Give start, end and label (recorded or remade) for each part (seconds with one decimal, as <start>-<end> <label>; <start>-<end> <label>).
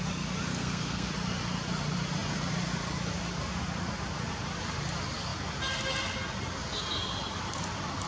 0.0-0.5 recorded; 0.5-1.1 remade; 1.1-8.1 recorded